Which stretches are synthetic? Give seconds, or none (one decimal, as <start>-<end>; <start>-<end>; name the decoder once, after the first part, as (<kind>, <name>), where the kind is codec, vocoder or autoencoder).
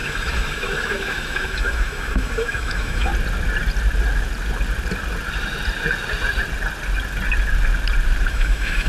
0.0-3.1 (autoencoder, DAC-VAE); 8.3-8.9